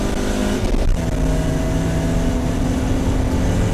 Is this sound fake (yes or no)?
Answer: no